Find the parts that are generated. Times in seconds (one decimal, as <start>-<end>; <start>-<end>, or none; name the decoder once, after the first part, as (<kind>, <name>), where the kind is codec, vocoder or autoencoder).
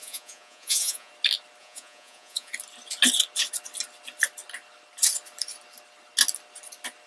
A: 0.0-1.1 (vocoder, Vocos); 1.6-2.5